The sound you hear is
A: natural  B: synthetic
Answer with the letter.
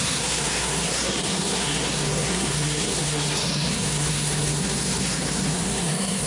B